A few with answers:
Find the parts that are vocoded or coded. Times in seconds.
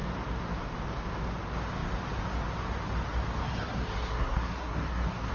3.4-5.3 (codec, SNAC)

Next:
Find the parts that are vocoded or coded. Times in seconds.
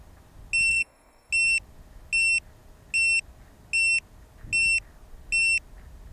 0.7-1.3 (codec, SNAC)